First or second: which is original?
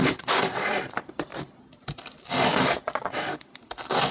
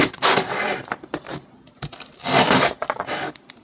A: second